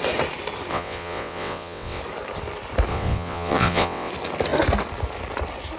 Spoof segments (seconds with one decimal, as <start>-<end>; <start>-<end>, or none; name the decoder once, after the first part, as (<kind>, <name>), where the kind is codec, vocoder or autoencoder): 0.7-2.0 (vocoder, WaveNeXt); 2.9-4.1